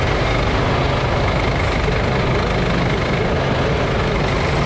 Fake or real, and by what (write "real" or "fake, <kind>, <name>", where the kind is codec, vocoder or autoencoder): real